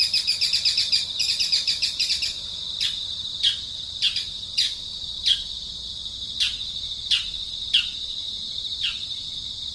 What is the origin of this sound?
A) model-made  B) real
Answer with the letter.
A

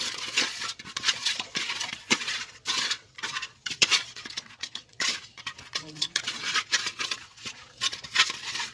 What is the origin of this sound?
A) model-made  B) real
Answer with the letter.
A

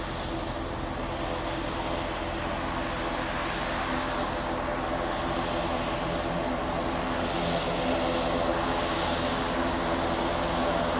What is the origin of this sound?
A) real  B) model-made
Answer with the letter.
A